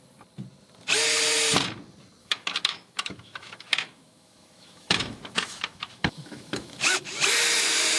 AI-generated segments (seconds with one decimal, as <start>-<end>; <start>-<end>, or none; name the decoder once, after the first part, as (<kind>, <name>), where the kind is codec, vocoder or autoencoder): 2.2-7.0 (autoencoder, DAC-VAE)

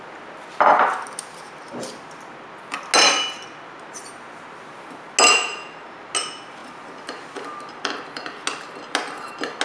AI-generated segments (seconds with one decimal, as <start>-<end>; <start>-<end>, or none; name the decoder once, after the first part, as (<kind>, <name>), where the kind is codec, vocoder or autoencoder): none

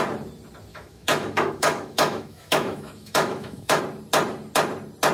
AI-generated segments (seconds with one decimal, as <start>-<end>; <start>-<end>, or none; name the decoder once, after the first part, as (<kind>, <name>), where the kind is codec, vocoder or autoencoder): 0.7-3.8 (autoencoder, DAC-VAE)

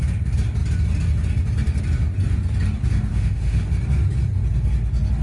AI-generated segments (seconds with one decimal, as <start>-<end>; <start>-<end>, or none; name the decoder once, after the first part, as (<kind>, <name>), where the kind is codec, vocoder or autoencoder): 3.1-3.7 (autoencoder, DAC-VAE)